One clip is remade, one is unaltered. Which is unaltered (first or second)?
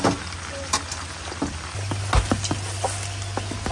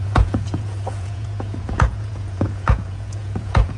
first